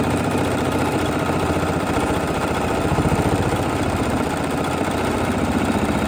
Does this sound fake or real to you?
fake